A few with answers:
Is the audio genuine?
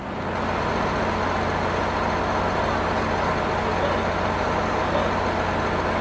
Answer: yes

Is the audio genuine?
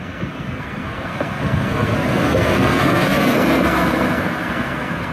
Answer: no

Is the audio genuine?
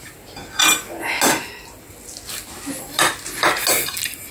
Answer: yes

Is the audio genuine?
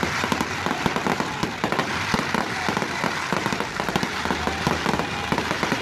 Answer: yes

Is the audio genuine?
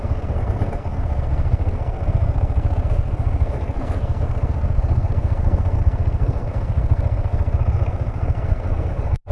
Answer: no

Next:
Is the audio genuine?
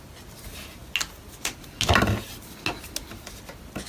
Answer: yes